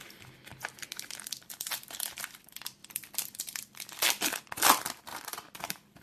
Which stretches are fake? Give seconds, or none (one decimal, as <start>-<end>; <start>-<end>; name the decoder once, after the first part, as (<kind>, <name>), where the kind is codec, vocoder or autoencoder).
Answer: 0.0-0.5 (vocoder, BigVGAN v2); 1.4-2.8; 3.4-5.1; 5.6-6.0